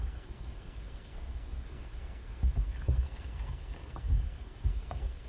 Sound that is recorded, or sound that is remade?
remade